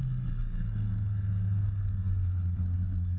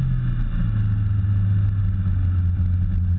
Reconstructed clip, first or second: first